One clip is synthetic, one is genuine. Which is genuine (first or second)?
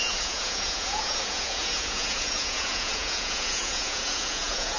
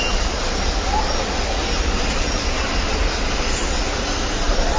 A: second